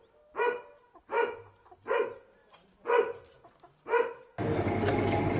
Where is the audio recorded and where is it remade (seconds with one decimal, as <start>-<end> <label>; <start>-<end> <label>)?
0.0-5.4 recorded